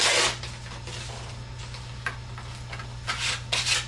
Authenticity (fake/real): real